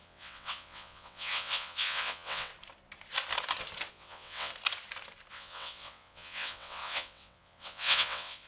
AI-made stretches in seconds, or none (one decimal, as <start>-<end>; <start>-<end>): 0.0-2.5; 3.9-4.5; 5.3-8.5